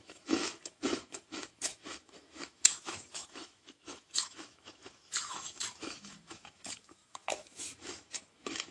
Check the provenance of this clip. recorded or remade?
remade